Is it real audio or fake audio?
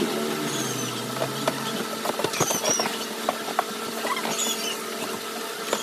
real